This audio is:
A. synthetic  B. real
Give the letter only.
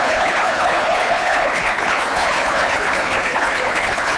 A